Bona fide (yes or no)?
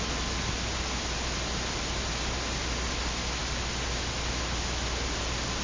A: yes